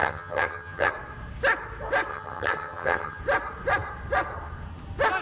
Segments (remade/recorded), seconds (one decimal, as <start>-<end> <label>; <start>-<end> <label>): 0.0-0.9 remade; 0.9-2.1 recorded; 2.1-3.2 remade; 3.2-5.2 recorded